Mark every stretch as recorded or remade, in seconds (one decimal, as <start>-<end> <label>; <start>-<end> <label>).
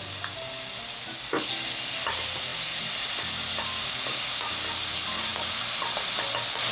0.0-6.7 recorded